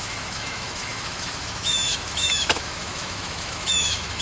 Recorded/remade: remade